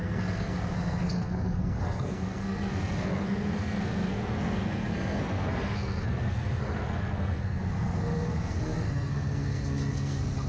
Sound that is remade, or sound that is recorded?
remade